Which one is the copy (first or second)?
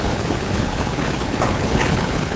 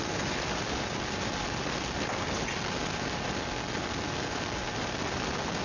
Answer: first